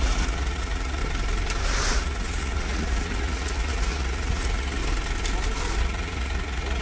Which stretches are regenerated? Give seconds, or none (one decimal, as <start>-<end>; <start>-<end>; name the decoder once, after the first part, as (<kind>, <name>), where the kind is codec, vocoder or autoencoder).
0.0-1.0 (vocoder, Vocos); 1.9-4.8; 5.8-6.8